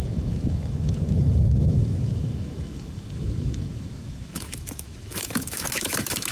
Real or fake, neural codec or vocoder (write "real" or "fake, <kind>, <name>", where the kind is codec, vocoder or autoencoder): fake, autoencoder, DAC-VAE